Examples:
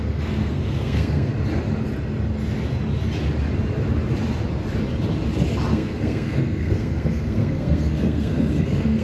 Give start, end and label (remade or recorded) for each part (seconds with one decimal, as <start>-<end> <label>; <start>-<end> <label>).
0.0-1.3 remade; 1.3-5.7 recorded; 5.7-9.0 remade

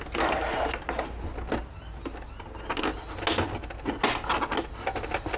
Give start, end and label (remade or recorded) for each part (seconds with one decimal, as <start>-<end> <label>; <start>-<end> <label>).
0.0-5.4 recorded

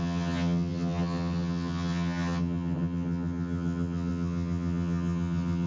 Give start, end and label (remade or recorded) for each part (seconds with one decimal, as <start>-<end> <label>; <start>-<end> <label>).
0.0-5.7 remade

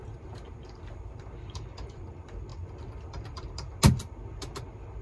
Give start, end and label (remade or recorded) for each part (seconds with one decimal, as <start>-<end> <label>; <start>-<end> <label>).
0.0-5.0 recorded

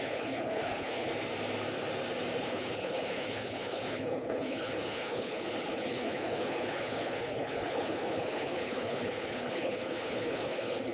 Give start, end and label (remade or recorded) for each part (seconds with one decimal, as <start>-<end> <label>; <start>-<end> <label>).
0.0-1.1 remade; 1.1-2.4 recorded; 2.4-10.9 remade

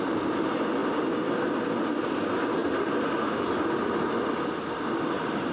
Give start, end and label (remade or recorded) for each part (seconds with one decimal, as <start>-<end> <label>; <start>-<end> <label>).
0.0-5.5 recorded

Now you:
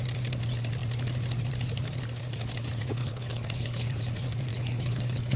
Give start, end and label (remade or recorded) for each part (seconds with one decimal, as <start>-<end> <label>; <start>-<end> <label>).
0.0-3.0 recorded; 3.0-4.0 remade; 4.0-4.5 recorded; 4.5-5.4 remade

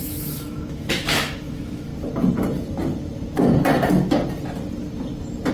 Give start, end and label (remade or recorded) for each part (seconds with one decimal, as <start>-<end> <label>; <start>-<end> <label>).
0.0-1.9 remade; 1.9-5.5 recorded